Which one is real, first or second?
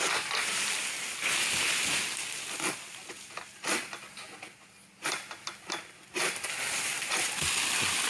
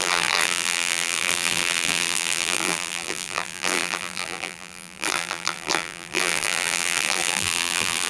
first